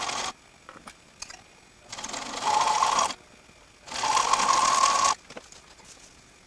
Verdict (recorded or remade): recorded